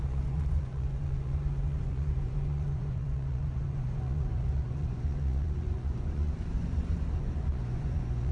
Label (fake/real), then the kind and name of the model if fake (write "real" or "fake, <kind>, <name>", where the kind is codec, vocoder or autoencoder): fake, vocoder, Vocos